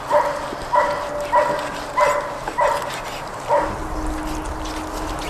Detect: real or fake real